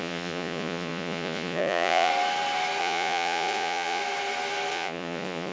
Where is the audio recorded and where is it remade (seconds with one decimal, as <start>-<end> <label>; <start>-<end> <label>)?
0.0-2.1 remade; 2.1-2.8 recorded; 2.8-4.0 remade; 4.0-4.7 recorded; 4.7-5.5 remade

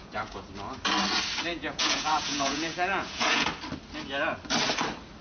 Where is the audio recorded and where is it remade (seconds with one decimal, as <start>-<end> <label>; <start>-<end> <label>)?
0.0-0.5 remade; 0.5-1.5 recorded; 1.5-3.5 remade; 3.5-5.2 recorded

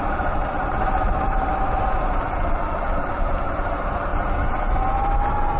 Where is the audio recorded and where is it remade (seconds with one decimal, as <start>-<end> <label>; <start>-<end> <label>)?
0.0-5.6 recorded

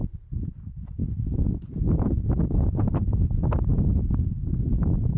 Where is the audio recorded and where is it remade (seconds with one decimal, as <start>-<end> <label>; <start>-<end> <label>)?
0.0-1.0 recorded; 1.0-2.3 remade; 2.3-5.2 recorded

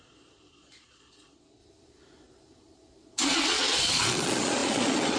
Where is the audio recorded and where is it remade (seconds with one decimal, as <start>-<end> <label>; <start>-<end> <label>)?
0.0-1.6 remade; 1.6-3.2 recorded; 3.2-5.2 remade